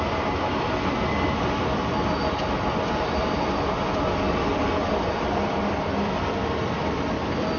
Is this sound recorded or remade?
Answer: remade